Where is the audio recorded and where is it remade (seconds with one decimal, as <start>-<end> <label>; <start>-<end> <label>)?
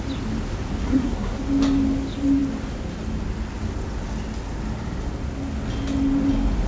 0.0-0.8 recorded; 0.8-1.4 remade; 1.4-6.7 recorded